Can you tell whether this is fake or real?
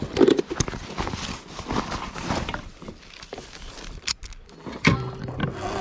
real